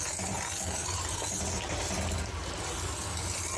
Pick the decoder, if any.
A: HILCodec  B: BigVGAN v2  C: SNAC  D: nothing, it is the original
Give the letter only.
D